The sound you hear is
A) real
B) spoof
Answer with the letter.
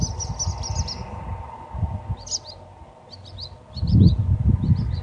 A